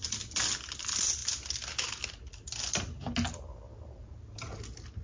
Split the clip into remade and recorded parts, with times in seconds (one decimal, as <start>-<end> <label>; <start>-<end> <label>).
0.0-5.0 recorded